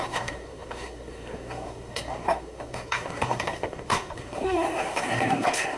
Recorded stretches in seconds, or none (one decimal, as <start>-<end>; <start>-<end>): none